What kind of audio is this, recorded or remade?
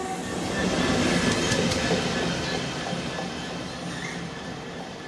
recorded